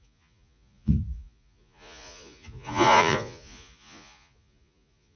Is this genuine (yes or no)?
no